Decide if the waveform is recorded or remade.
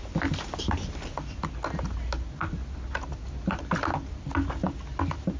recorded